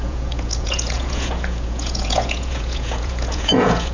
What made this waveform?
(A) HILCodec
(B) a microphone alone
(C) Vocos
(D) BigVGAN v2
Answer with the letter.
C